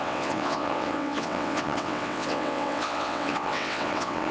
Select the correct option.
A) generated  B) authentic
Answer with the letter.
A